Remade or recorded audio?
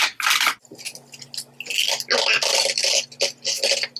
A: recorded